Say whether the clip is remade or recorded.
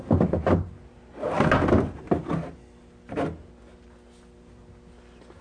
recorded